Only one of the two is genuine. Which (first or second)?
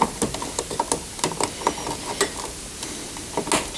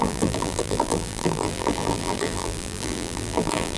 first